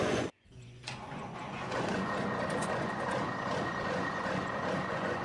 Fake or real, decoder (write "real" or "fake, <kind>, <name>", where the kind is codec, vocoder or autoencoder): fake, vocoder, Vocos